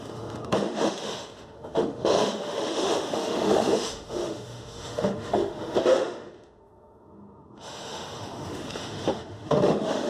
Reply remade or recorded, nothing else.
remade